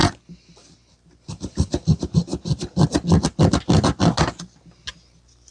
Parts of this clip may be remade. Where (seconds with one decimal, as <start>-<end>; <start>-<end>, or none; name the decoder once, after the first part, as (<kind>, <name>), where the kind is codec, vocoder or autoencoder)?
1.3-2.3 (vocoder, BigVGAN v2); 4.9-5.5